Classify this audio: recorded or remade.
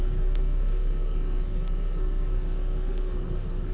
remade